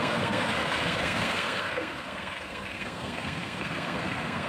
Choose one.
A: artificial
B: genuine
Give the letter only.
A